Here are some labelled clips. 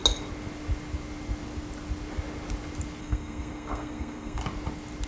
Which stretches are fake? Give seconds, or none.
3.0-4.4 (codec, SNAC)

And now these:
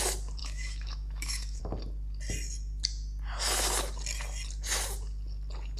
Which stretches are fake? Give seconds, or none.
0.4-1.6 (autoencoder, DAC-VAE)